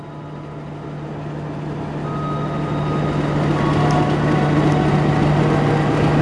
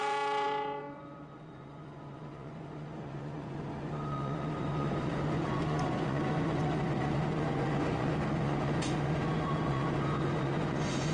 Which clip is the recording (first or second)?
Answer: first